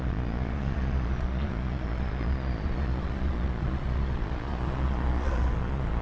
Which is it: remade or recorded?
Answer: remade